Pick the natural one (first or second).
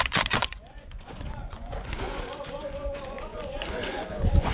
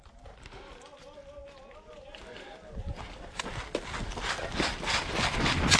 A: second